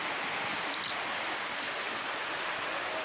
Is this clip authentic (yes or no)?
yes